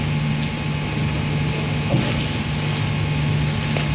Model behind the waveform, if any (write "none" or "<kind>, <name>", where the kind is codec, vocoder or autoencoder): none